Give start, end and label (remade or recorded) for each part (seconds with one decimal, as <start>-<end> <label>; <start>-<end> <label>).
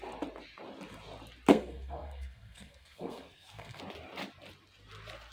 0.0-1.5 recorded; 1.5-3.8 remade; 3.8-5.3 recorded